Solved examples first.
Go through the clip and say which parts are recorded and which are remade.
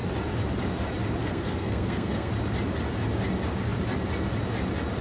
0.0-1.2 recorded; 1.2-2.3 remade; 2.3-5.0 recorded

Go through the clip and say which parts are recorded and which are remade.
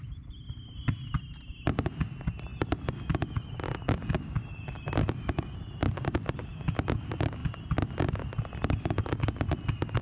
0.0-10.0 recorded